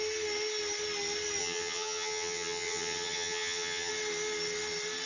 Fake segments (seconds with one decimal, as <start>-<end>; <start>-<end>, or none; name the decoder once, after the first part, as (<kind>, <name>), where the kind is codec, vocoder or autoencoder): 1.4-3.9 (vocoder, HiFi-GAN)